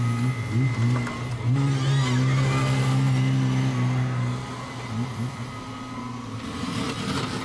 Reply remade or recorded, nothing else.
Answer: recorded